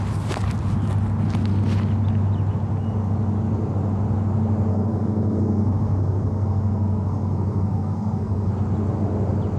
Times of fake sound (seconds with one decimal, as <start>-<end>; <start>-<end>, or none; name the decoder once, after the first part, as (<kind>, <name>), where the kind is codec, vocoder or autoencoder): 4.7-8.5 (codec, SNAC)